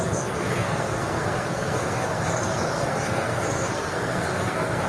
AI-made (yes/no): yes